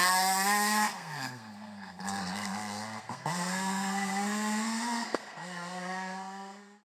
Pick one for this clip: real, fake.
fake